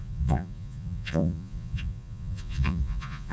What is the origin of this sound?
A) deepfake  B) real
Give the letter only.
A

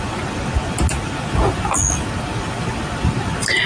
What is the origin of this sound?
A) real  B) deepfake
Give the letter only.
A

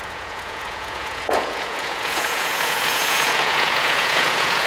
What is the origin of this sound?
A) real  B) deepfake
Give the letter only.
B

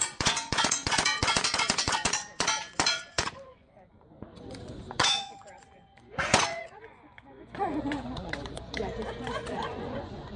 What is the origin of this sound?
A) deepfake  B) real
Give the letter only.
A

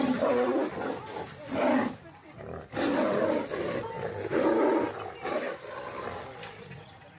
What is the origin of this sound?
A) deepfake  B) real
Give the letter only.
B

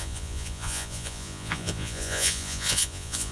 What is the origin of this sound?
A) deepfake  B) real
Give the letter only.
A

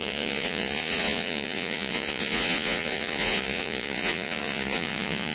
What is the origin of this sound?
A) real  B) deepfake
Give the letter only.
B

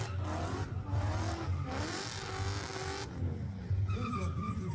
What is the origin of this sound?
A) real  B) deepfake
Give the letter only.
A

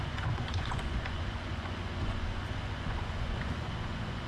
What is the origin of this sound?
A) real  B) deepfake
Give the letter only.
B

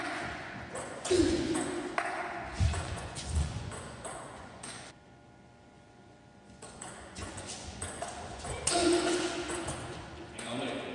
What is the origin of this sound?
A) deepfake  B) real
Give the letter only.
A